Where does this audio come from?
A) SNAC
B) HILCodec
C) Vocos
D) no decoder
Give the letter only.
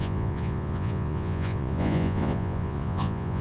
C